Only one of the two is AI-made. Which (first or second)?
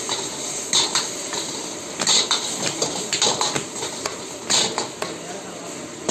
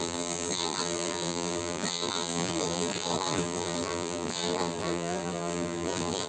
second